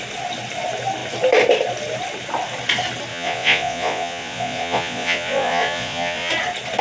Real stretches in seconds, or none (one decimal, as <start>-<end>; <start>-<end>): 0.0-3.1; 6.3-6.8